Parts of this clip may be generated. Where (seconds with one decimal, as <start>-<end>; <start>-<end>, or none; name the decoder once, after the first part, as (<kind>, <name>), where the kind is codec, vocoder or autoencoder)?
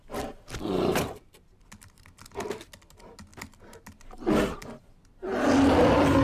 none